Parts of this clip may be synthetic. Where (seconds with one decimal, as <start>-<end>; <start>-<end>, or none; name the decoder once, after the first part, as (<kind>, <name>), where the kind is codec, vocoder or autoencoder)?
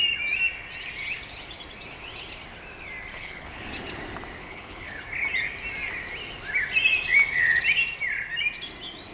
3.1-3.7 (codec, HILCodec); 4.4-5.0